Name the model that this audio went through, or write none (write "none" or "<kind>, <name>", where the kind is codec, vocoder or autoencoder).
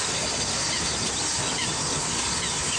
none